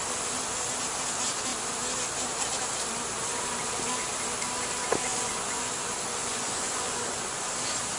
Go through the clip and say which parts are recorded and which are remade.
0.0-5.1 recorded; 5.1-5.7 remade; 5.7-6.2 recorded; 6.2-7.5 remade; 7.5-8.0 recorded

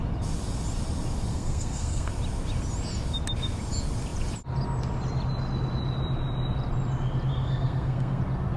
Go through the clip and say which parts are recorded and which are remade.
0.0-1.3 recorded; 1.3-2.1 remade; 2.1-7.3 recorded; 7.3-8.2 remade; 8.2-8.6 recorded

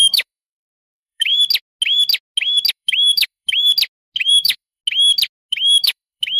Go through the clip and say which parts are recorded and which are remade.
0.0-1.3 remade; 1.3-2.7 recorded; 2.7-3.7 remade; 3.7-4.3 recorded; 4.3-4.8 remade; 4.8-5.5 recorded; 5.5-6.4 remade